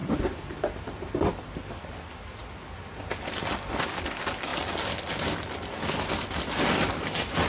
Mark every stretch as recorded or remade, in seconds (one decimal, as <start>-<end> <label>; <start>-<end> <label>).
0.0-1.6 remade; 1.6-7.5 recorded